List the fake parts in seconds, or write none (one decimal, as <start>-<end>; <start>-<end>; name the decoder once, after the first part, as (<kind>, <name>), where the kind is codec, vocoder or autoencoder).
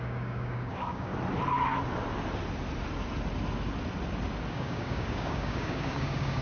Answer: 0.0-1.1 (codec, DAC); 4.5-6.4